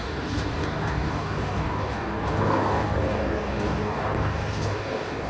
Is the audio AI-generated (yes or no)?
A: yes